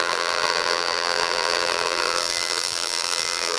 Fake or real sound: fake